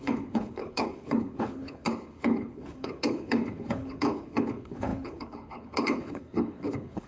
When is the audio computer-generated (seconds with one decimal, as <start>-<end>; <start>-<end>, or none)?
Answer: 0.0-7.1